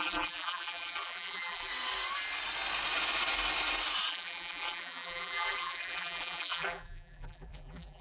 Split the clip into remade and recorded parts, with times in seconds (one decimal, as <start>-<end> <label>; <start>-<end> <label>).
0.0-1.7 remade; 1.7-4.1 recorded; 4.1-8.0 remade